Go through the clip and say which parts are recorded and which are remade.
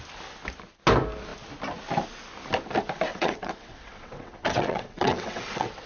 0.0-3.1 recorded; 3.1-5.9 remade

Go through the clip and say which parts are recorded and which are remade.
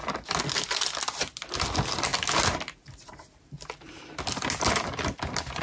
0.0-5.6 recorded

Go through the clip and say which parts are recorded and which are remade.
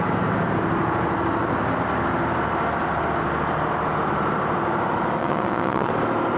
0.0-5.2 recorded; 5.2-5.9 remade; 5.9-6.4 recorded